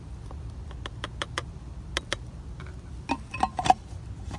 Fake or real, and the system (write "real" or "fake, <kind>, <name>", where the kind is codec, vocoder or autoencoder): real